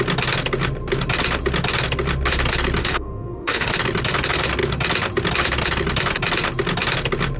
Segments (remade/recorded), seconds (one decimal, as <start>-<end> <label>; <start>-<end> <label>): 0.0-2.8 recorded; 2.8-3.7 remade; 3.7-7.4 recorded